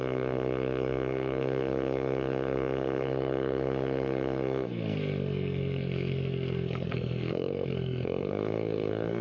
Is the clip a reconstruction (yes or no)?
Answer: yes